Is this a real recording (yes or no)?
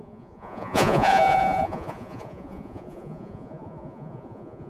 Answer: no